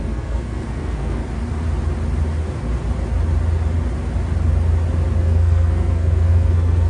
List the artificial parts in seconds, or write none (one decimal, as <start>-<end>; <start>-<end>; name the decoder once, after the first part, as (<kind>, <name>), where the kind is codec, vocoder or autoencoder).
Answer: 0.0-1.2 (codec, SNAC); 5.2-6.9